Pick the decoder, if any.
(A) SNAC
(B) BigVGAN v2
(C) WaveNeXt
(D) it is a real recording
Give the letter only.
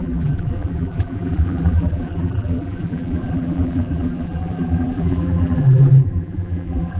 B